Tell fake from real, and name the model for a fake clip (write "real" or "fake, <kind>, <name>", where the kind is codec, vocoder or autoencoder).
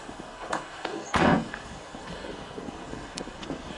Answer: fake, codec, SNAC